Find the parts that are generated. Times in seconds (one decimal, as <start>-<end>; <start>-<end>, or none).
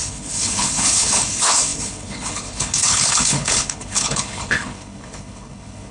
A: 0.0-5.9